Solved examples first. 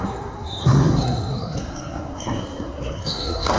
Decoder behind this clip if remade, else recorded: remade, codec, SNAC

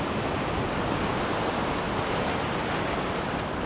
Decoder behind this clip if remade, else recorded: recorded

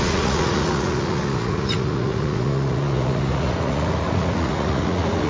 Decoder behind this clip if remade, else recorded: remade, vocoder, Vocos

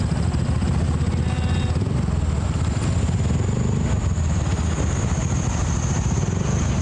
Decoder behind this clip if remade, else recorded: recorded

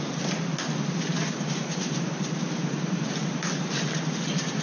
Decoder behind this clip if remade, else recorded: recorded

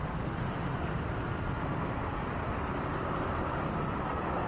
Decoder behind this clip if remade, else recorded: recorded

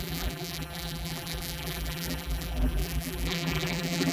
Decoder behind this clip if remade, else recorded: remade, vocoder, BigVGAN v2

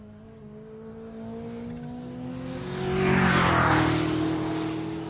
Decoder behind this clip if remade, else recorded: recorded